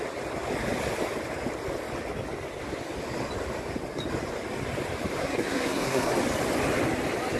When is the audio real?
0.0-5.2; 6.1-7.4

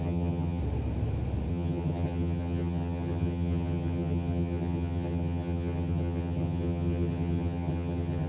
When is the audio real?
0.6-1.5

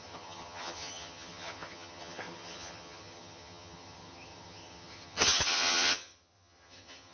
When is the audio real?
none

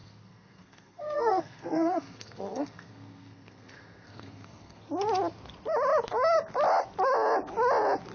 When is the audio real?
4.8-8.1